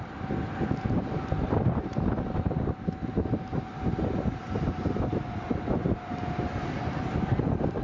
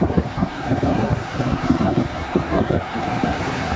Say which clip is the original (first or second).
first